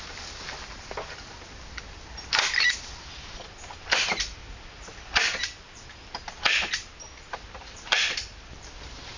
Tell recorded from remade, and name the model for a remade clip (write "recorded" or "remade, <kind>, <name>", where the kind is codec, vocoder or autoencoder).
recorded